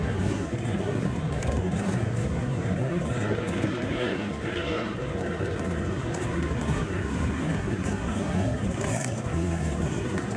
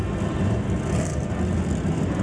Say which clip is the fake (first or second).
first